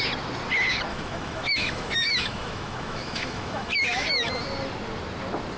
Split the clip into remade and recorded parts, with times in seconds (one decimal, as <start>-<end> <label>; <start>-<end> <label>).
0.0-0.9 recorded; 0.9-4.3 remade; 4.3-5.6 recorded